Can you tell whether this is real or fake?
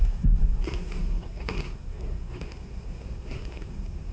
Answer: fake